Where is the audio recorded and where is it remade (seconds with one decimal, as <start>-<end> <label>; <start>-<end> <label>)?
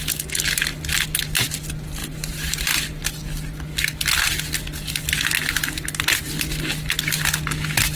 0.0-2.0 recorded; 2.0-2.6 remade; 2.6-8.0 recorded